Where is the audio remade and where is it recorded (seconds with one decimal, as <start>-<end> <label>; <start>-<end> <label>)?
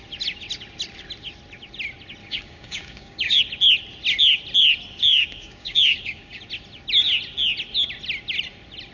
0.0-2.2 recorded; 2.2-3.4 remade; 3.4-5.1 recorded; 5.1-6.4 remade; 6.4-8.9 recorded